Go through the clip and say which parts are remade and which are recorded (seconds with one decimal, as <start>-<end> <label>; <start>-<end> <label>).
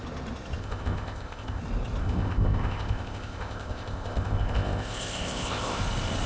0.0-0.6 recorded; 0.6-1.6 remade; 1.6-2.0 recorded; 2.0-5.8 remade; 5.8-6.3 recorded